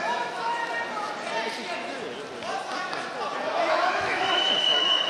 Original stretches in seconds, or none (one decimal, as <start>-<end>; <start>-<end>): 0.6-3.7